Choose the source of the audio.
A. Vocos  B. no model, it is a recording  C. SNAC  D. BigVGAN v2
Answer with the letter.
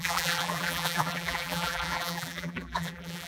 D